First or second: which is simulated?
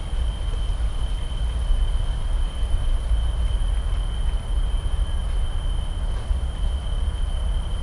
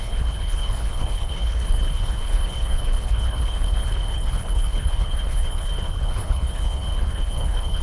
second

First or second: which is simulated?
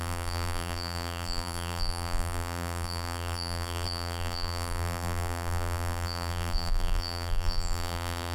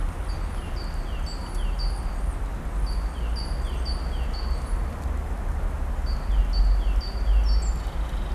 first